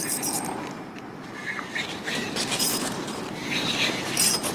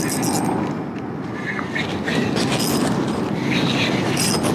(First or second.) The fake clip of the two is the first